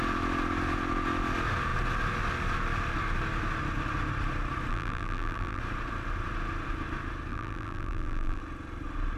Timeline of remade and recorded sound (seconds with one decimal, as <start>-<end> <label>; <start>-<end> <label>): 0.0-4.7 recorded; 4.7-5.6 remade; 5.6-7.3 recorded; 7.3-8.4 remade; 8.4-9.2 recorded